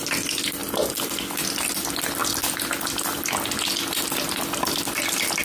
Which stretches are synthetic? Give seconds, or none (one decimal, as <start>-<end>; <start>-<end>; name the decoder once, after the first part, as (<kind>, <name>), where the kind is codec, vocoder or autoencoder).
none

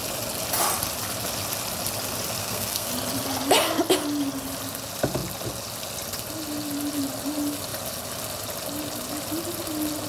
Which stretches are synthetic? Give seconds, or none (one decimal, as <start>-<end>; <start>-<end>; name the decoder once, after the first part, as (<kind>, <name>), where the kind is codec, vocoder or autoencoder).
2.4-2.9 (codec, SNAC)